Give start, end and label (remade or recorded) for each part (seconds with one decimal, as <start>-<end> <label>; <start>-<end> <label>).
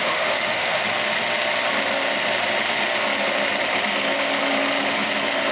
0.0-0.8 remade; 0.8-5.5 recorded